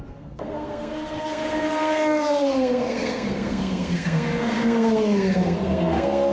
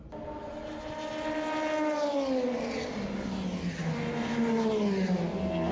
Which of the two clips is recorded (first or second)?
second